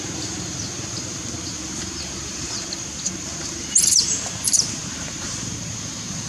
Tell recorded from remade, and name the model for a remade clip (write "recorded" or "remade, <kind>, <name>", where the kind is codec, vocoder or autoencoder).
remade, vocoder, BigVGAN v2